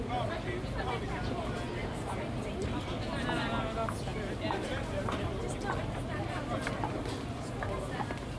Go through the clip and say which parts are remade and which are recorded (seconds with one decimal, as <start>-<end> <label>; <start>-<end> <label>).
0.0-1.8 recorded; 1.8-2.7 remade; 2.7-8.4 recorded